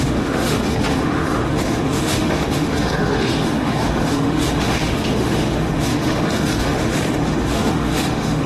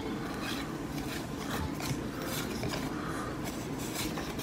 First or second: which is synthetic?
first